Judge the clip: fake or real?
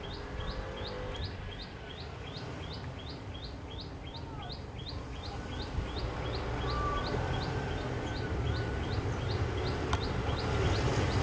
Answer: real